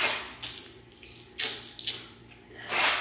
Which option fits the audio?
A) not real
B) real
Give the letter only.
B